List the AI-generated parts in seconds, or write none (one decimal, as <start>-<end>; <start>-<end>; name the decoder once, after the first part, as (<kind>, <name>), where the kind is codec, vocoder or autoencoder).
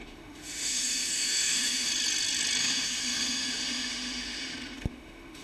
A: 0.0-1.9 (autoencoder, DAC-VAE); 2.6-5.4